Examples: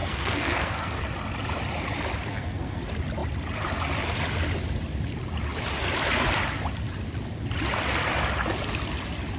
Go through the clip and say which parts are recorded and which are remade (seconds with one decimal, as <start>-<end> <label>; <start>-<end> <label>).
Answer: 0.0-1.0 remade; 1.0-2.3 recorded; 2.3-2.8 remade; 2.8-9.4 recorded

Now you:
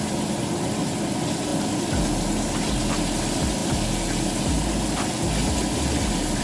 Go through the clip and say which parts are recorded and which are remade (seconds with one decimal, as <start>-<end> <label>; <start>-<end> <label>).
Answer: 0.0-6.4 recorded

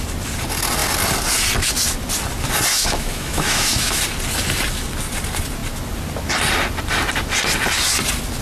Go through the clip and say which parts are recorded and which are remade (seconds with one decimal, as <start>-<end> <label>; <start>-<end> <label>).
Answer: 0.0-2.7 recorded; 2.7-4.0 remade; 4.0-8.4 recorded

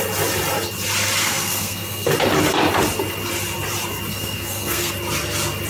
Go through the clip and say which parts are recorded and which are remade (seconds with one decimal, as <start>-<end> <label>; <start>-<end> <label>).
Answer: 0.0-1.2 recorded; 1.2-2.1 remade; 2.1-4.1 recorded; 4.1-4.9 remade; 4.9-5.7 recorded